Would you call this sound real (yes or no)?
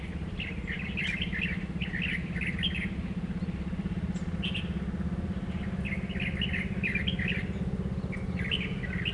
yes